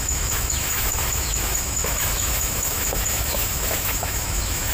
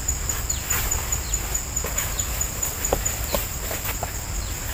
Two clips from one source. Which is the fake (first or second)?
first